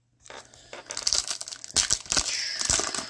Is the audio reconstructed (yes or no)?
no